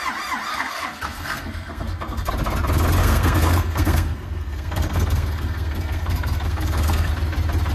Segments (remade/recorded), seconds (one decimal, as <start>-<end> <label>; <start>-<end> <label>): 0.0-0.5 recorded; 0.5-2.3 remade; 2.3-3.0 recorded; 3.0-7.1 remade; 7.1-7.7 recorded